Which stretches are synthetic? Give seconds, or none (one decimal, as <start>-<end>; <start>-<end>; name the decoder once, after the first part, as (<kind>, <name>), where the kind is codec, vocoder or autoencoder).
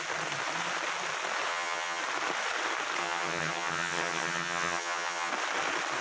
1.5-2.0 (vocoder, HiFi-GAN); 3.0-5.3